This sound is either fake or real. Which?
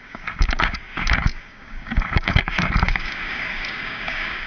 fake